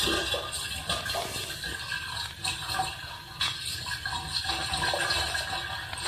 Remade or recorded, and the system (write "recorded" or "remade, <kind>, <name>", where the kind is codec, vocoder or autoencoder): recorded